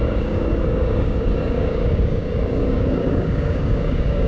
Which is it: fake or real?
fake